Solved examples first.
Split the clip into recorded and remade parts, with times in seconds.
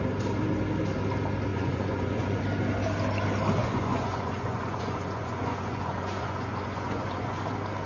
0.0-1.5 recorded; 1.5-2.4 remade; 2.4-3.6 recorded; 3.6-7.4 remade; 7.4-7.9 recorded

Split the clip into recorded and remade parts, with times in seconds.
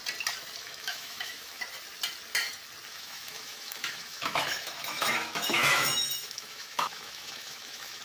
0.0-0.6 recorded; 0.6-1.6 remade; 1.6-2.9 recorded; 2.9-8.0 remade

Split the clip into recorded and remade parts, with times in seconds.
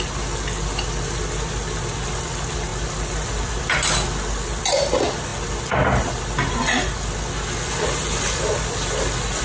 0.0-9.4 recorded